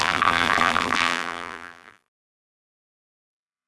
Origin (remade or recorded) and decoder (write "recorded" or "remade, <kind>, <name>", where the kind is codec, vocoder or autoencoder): remade, vocoder, BigVGAN v2